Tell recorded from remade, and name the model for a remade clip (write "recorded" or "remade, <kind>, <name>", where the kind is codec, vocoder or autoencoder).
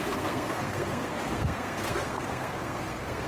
remade, codec, SNAC